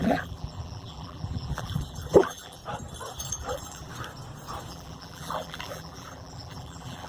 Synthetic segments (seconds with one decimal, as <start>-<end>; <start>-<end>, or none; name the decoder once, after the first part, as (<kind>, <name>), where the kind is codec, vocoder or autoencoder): 0.0-2.6 (vocoder, BigVGAN v2); 3.3-3.9; 4.7-7.1